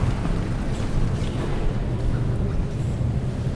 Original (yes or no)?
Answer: yes